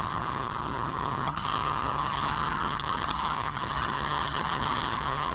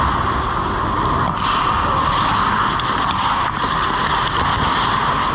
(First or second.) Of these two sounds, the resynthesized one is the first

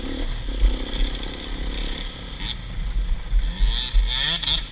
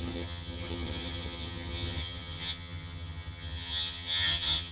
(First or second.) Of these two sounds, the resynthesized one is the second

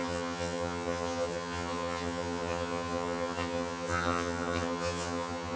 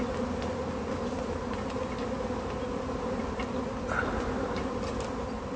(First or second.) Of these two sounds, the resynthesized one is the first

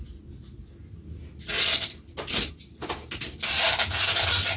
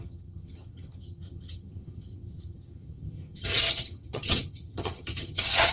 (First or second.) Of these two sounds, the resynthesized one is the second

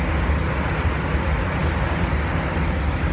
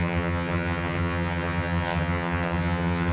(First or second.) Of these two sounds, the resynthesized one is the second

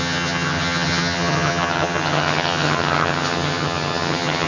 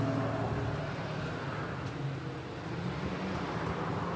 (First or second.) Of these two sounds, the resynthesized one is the first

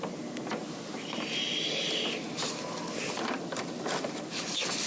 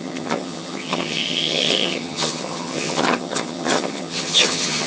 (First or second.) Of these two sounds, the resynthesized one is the second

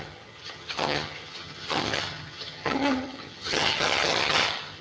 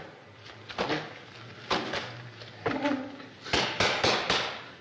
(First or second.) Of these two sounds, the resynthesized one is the first